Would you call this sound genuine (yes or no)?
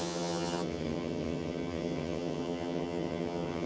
no